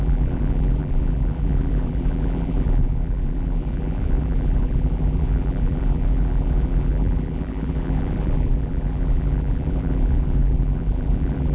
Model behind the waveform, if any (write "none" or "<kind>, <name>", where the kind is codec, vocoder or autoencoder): vocoder, BigVGAN v2